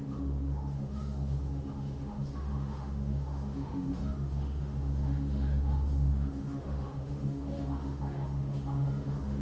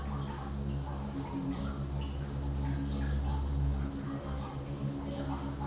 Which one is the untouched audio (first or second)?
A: second